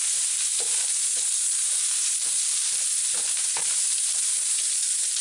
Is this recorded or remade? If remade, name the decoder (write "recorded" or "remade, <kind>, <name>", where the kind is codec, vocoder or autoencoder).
remade, vocoder, BigVGAN v2